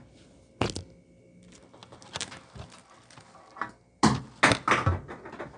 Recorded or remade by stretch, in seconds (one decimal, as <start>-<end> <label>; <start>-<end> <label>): 0.0-5.6 recorded